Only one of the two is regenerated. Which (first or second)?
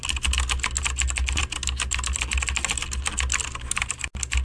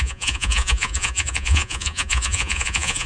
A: second